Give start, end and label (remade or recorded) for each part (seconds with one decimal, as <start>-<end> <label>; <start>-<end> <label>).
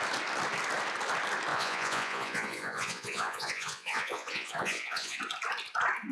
0.0-1.5 recorded; 1.5-5.2 remade; 5.2-6.1 recorded